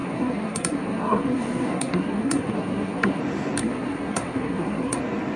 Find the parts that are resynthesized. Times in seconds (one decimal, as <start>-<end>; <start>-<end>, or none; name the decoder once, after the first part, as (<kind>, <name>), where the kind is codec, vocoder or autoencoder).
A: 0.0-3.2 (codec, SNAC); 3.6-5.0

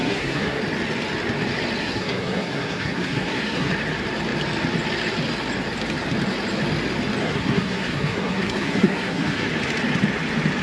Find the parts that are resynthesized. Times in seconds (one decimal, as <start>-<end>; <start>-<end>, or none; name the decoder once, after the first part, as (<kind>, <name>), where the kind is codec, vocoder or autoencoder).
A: 0.0-0.6 (codec, SNAC); 1.8-3.7; 7.2-9.5

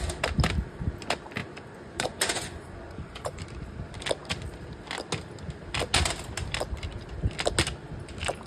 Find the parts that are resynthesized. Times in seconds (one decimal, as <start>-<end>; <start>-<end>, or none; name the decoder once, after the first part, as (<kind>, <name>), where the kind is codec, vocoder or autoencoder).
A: 1.4-3.4 (vocoder, Vocos)